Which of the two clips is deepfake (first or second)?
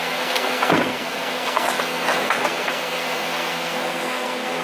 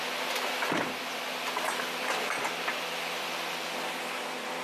first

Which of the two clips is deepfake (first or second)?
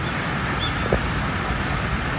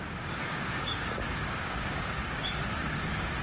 second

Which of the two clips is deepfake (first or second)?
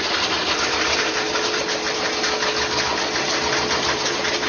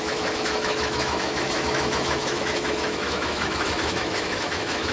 second